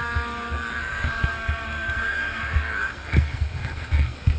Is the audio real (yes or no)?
no